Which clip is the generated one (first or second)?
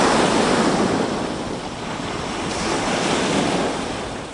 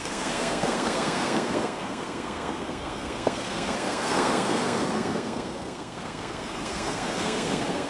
second